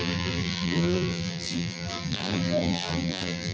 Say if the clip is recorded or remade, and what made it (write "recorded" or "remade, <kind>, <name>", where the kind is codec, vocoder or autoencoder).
remade, vocoder, BigVGAN v2